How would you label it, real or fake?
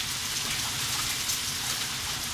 real